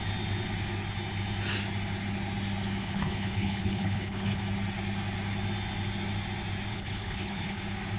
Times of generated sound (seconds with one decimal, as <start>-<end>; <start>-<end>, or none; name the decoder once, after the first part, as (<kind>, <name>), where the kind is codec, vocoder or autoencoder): 2.8-4.4 (codec, HILCodec); 6.7-7.6